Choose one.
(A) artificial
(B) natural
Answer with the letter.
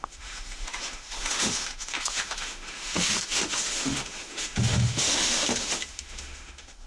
A